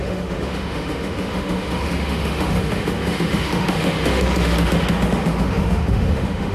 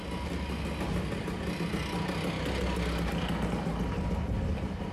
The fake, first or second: first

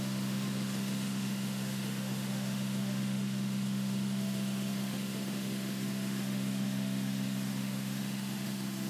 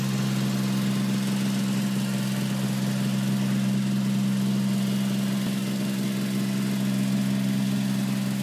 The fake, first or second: first